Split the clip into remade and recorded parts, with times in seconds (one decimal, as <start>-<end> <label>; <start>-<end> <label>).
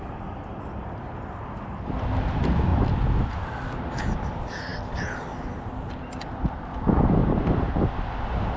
0.0-8.6 recorded